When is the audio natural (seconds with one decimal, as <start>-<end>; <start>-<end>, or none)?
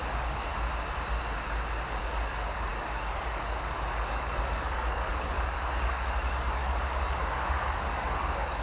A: 0.5-2.0